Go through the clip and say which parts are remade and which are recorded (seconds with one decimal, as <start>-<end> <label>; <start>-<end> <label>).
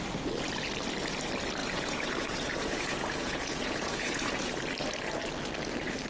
0.0-1.6 recorded; 1.6-4.5 remade; 4.5-6.1 recorded